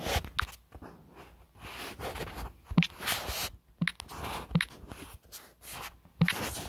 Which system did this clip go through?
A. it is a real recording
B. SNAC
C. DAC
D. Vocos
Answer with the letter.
A